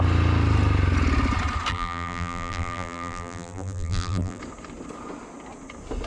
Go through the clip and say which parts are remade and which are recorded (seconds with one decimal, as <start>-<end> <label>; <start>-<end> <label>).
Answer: 0.0-1.7 recorded; 1.7-4.4 remade; 4.4-6.1 recorded